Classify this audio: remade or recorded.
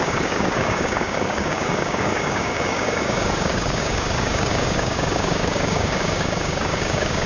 remade